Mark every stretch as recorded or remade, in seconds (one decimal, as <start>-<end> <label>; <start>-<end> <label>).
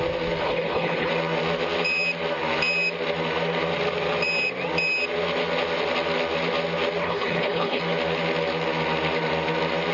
0.0-0.4 recorded; 0.4-1.1 remade; 1.1-7.0 recorded; 7.0-7.8 remade; 7.8-9.9 recorded